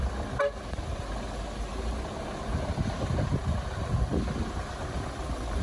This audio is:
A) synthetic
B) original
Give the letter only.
B